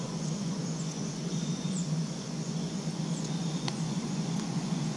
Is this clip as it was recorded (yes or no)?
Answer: no